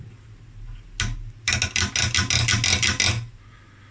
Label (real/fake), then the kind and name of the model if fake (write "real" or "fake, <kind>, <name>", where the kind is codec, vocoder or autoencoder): real